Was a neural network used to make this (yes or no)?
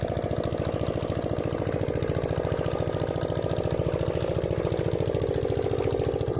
no